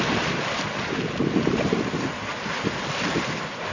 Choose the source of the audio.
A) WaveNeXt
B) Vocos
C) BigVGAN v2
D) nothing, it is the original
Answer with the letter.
D